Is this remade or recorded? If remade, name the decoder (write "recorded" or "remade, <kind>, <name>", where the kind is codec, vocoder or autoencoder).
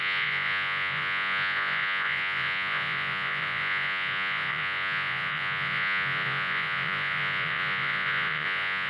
remade, vocoder, Vocos